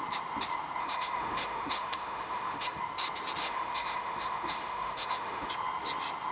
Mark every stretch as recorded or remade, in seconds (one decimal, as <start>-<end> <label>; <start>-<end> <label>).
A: 0.0-0.8 recorded; 0.8-2.8 remade; 2.8-3.4 recorded; 3.4-5.5 remade; 5.5-6.3 recorded